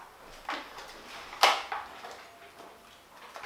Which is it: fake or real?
real